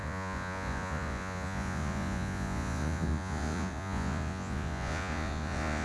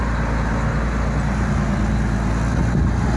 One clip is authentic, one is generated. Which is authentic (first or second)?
second